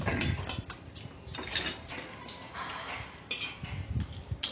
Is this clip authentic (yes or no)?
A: yes